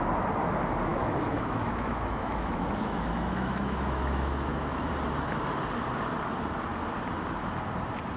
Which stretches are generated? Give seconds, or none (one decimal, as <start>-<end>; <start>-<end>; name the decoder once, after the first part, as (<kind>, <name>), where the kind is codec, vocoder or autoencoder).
0.9-4.9 (autoencoder, DAC-VAE)